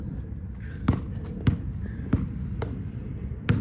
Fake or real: real